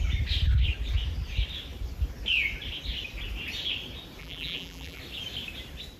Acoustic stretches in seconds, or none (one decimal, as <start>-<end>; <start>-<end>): 0.0-4.2; 5.0-6.0